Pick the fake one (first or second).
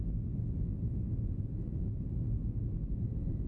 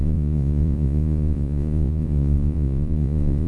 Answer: second